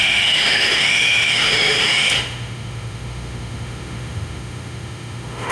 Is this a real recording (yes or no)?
no